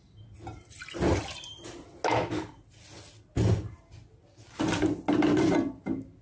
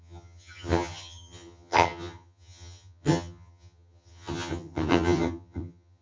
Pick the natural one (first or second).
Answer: first